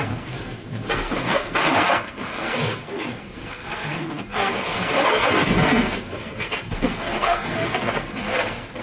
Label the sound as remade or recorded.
remade